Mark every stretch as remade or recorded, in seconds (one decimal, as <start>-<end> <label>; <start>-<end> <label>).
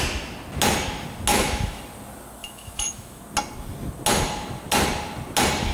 0.0-1.3 recorded; 1.3-1.8 remade; 1.8-2.4 recorded; 2.4-3.2 remade; 3.2-5.7 recorded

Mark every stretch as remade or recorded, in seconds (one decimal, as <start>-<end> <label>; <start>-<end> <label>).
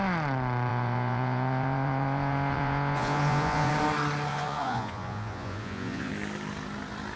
0.0-0.7 recorded; 0.7-3.7 remade; 3.7-4.3 recorded; 4.3-6.1 remade; 6.1-7.2 recorded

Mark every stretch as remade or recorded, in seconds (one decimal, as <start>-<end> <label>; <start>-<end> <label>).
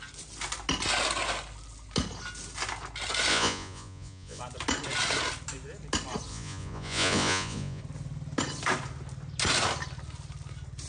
0.0-3.3 recorded; 3.3-4.4 remade; 4.4-6.3 recorded; 6.3-7.8 remade; 7.8-10.9 recorded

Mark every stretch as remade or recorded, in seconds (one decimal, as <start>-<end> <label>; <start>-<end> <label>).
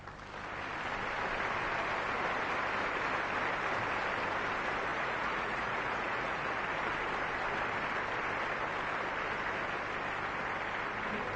0.0-4.9 recorded; 4.9-6.6 remade; 6.6-11.4 recorded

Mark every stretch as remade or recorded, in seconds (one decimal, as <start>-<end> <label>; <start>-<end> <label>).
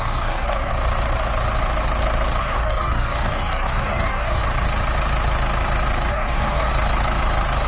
0.0-0.7 remade; 0.7-2.4 recorded; 2.4-4.4 remade; 4.4-6.1 recorded; 6.1-6.7 remade; 6.7-7.7 recorded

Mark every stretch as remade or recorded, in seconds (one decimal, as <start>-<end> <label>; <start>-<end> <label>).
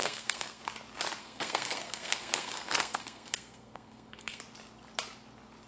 0.0-0.6 remade; 0.6-1.2 recorded; 1.2-4.4 remade; 4.4-5.7 recorded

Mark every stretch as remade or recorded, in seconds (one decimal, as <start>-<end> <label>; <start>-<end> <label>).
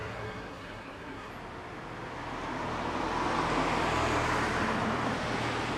0.0-1.3 remade; 1.3-5.8 recorded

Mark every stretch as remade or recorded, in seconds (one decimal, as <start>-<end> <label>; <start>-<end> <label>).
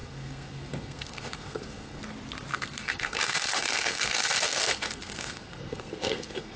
0.0-2.0 remade; 2.0-2.5 recorded; 2.5-6.6 remade